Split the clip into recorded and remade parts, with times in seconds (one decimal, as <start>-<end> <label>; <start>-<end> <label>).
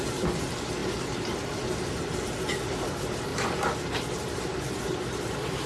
0.0-0.8 remade; 0.8-2.5 recorded; 2.5-3.3 remade; 3.3-4.3 recorded; 4.3-5.7 remade